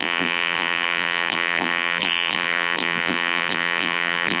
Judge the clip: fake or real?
fake